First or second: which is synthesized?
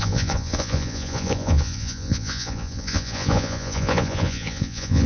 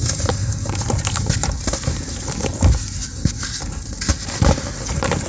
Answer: first